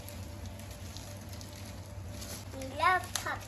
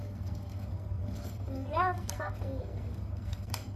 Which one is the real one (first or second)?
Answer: first